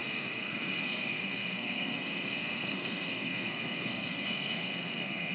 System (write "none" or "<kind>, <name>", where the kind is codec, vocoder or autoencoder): codec, SNAC